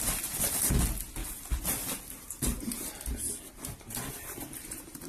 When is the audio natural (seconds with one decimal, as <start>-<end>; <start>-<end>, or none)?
0.0-5.1